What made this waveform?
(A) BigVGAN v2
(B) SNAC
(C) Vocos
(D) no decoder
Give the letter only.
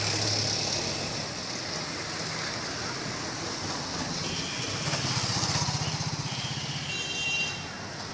D